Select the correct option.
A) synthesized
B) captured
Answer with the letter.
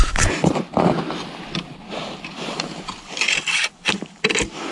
A